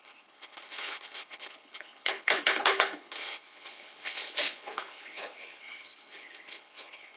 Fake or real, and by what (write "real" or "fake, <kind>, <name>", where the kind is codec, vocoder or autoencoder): fake, codec, HILCodec